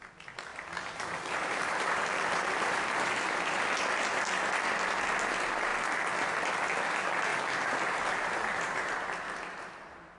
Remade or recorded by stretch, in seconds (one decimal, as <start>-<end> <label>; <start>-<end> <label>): 0.0-0.5 recorded; 0.5-3.6 remade; 3.6-7.3 recorded; 7.3-8.9 remade; 8.9-10.2 recorded